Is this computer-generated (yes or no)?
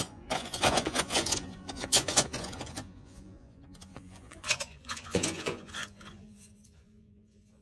yes